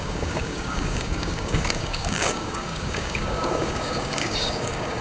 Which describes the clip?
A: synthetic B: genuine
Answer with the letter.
A